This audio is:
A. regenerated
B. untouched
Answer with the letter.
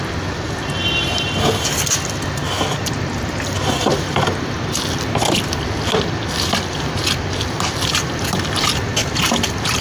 B